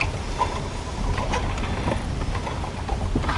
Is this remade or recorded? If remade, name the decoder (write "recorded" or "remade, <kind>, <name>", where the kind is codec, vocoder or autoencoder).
recorded